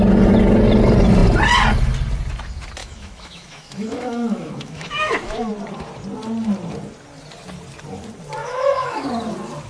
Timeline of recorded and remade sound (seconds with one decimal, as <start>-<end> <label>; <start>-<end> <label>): 0.0-2.8 recorded; 2.8-5.5 remade; 5.5-8.4 recorded; 8.4-9.1 remade; 9.1-9.7 recorded